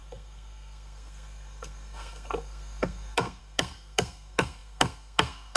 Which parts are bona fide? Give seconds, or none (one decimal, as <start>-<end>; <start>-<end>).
none

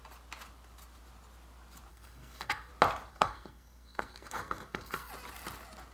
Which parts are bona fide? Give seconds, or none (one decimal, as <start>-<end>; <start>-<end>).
0.0-1.9; 2.7-3.1; 5.1-5.9

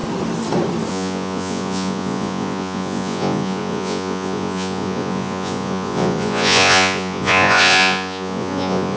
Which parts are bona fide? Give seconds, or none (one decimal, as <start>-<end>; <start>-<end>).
0.0-0.9

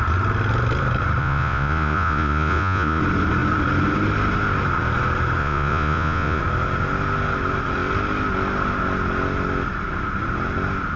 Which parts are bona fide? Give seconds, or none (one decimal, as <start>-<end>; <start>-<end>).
0.0-1.2; 3.0-5.4; 6.4-11.0

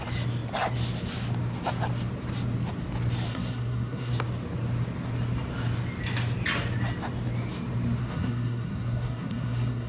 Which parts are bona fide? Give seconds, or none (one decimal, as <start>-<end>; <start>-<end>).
0.0-3.3; 4.1-8.0